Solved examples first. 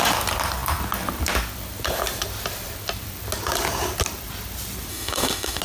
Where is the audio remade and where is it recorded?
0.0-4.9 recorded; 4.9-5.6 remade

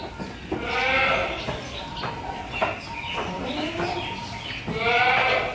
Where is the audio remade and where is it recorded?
0.0-5.5 recorded

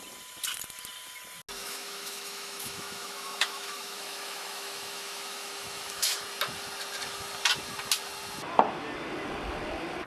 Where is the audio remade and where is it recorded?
0.0-1.6 recorded; 1.6-6.2 remade; 6.2-10.1 recorded